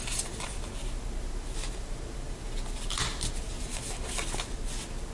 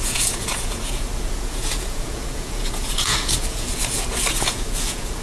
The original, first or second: first